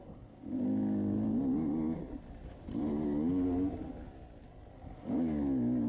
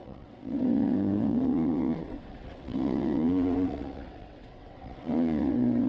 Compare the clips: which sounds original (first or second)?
first